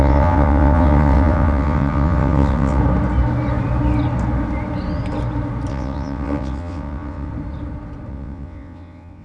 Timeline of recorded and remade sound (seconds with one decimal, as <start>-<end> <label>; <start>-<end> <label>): 0.0-2.8 remade; 2.8-5.7 recorded; 5.7-7.3 remade; 7.3-8.1 recorded; 8.1-9.2 remade